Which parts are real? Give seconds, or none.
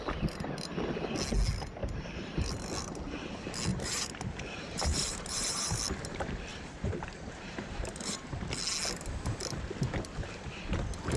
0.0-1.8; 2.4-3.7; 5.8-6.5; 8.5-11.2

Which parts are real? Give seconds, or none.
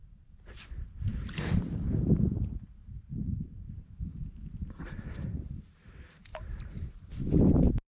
4.1-4.7; 6.3-7.5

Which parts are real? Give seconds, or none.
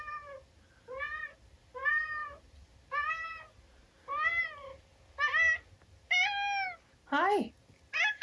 0.0-8.2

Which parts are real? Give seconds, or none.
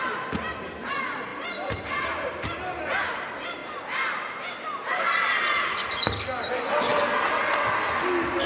0.0-1.3; 2.7-3.6; 4.4-8.5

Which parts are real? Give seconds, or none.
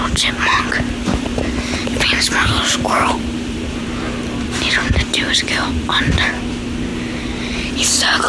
0.0-1.8; 6.4-8.3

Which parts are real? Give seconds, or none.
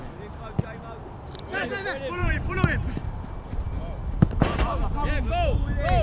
0.0-2.2; 4.6-6.0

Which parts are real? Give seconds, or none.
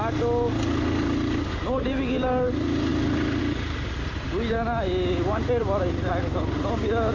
0.0-5.6; 6.1-7.1